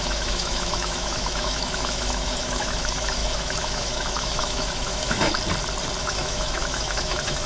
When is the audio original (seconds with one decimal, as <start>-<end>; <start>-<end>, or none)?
5.3-6.0